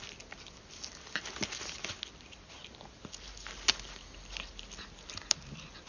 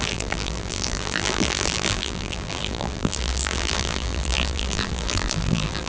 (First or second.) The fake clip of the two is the second